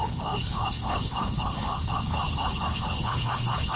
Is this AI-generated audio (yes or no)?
yes